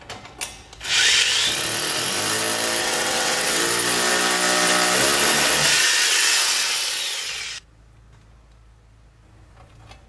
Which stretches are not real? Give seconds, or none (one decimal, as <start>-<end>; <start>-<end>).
2.8-3.6; 5.6-7.4